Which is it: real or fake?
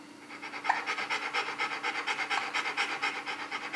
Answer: real